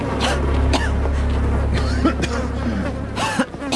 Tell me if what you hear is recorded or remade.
recorded